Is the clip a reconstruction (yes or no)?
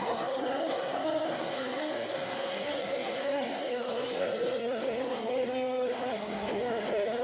yes